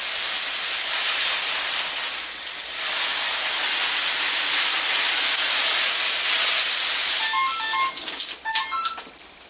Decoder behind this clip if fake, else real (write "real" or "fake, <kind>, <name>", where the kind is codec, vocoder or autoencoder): real